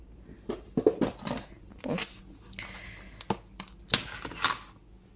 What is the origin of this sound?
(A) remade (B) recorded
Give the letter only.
B